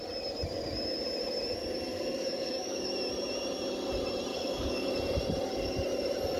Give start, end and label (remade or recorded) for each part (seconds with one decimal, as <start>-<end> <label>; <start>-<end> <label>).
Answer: 0.0-1.9 recorded; 1.9-2.9 remade; 2.9-4.3 recorded; 4.3-4.9 remade; 4.9-6.4 recorded